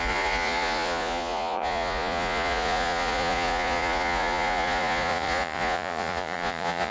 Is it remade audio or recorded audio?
remade